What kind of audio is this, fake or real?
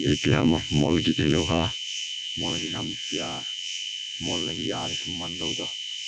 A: fake